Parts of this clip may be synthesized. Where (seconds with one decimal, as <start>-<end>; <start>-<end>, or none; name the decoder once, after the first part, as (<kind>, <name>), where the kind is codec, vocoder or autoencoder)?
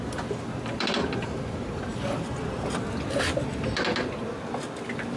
none